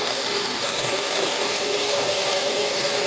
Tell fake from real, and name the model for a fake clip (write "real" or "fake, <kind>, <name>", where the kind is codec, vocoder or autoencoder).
fake, codec, DAC